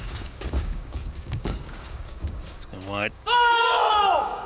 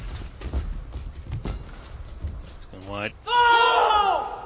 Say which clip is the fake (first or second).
first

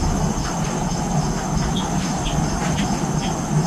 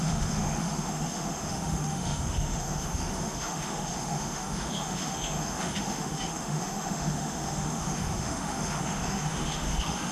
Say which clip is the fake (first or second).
second